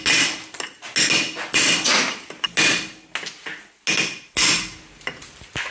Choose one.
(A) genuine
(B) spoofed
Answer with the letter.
A